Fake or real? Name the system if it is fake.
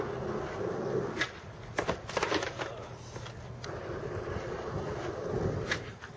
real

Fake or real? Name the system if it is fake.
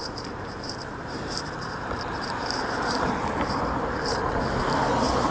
fake, vocoder, BigVGAN v2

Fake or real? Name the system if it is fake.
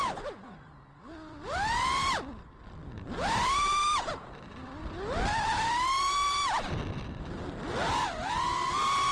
fake, vocoder, BigVGAN v2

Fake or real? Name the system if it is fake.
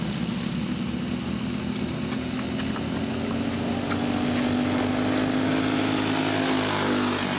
real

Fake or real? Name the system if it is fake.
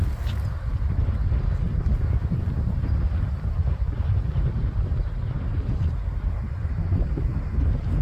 real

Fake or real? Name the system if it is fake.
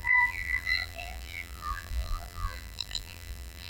fake, vocoder, BigVGAN v2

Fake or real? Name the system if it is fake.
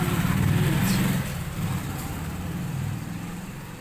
fake, vocoder, BigVGAN v2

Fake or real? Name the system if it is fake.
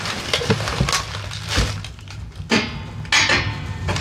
real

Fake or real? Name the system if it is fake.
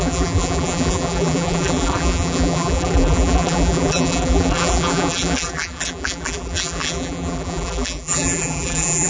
fake, vocoder, BigVGAN v2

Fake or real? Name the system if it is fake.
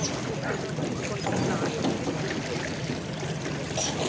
real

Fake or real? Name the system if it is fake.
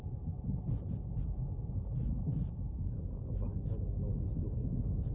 real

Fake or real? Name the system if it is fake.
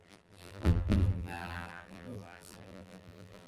fake, vocoder, BigVGAN v2